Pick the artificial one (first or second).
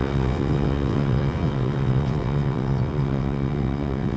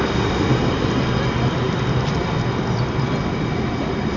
first